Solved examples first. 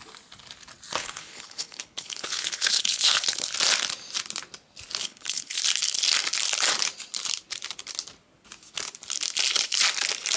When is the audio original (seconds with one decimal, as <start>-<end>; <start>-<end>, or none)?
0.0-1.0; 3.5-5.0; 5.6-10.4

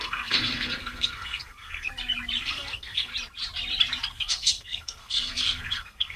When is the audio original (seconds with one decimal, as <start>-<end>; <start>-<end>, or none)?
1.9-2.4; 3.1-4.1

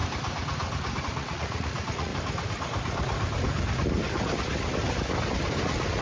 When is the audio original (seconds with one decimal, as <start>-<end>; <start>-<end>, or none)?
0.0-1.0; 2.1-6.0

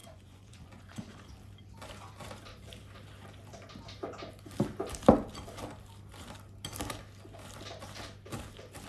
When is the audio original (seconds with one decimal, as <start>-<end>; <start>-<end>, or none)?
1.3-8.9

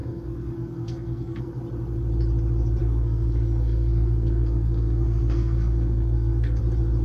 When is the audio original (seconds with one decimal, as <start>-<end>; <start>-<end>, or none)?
1.6-2.8; 6.6-7.0

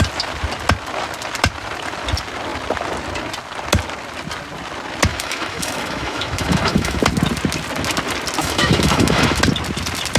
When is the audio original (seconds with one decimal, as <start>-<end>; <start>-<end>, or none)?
0.0-5.1; 7.0-8.4; 9.4-10.2

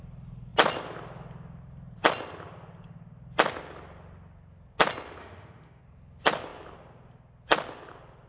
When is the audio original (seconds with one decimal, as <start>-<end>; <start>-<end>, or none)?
0.0-5.2; 5.8-8.3